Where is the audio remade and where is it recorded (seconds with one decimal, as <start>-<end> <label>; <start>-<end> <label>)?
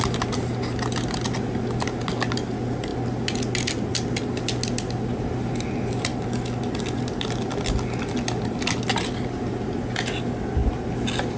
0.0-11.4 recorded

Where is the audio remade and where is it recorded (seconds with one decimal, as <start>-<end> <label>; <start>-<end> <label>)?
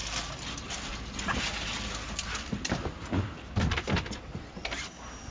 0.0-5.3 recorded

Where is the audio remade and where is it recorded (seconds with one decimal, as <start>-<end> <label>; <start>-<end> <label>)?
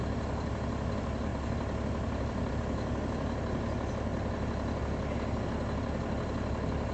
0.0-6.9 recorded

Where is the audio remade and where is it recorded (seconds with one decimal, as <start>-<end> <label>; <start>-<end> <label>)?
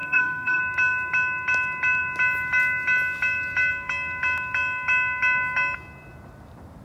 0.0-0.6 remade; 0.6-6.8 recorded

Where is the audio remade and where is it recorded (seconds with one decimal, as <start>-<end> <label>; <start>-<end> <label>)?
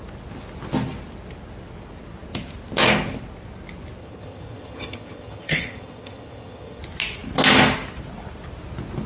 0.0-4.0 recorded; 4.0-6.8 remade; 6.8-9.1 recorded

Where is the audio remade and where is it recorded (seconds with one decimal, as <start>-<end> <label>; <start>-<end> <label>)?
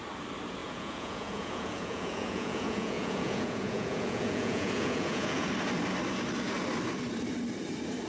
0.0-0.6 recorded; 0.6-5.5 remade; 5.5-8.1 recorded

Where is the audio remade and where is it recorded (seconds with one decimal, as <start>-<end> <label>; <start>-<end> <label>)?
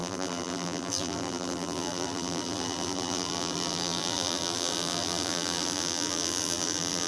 0.0-7.1 remade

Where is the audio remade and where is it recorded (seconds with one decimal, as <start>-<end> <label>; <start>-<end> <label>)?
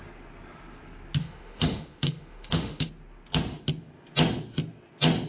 0.0-1.2 recorded; 1.2-2.9 remade; 2.9-5.3 recorded